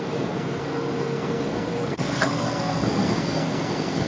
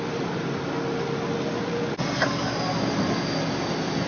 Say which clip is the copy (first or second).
first